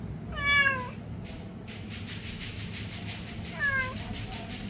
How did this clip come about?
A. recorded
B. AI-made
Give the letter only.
A